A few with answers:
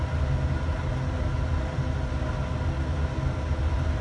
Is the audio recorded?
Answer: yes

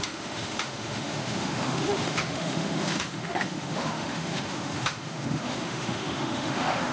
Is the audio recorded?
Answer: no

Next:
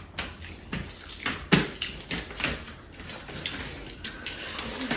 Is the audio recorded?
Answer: yes